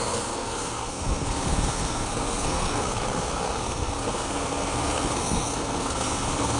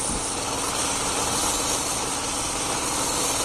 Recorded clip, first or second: second